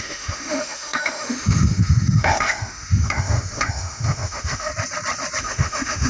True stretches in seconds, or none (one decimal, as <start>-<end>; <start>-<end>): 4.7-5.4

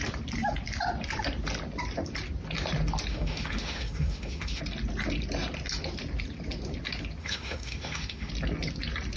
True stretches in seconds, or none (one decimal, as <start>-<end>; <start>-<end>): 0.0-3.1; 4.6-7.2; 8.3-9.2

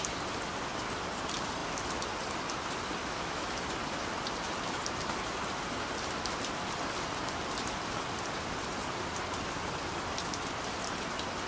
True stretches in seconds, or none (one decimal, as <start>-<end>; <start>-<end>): 0.0-3.0; 3.6-11.5

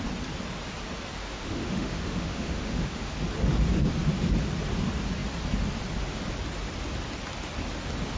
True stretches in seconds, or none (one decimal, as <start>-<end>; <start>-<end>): 0.0-1.2; 3.1-8.2

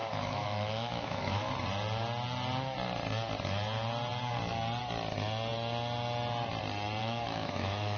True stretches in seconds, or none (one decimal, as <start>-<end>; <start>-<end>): 1.5-7.0

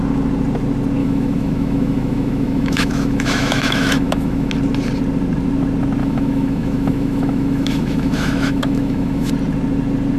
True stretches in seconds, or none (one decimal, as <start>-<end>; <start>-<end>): 0.0-1.0; 4.5-6.0; 9.3-10.2

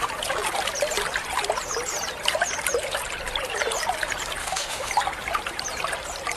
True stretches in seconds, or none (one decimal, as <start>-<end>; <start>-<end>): 0.0-4.4; 4.9-6.4

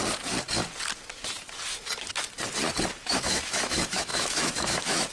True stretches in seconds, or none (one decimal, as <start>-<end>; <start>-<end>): 0.0-3.1